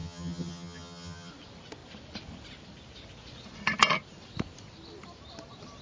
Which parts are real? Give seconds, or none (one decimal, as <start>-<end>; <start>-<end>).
1.3-5.8